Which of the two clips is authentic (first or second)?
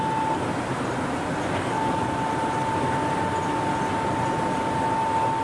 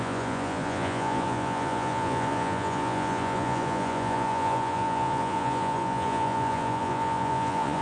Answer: first